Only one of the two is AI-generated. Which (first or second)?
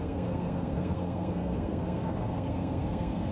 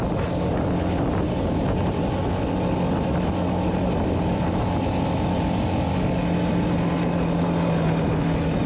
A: first